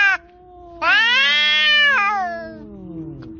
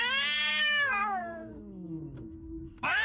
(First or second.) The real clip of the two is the first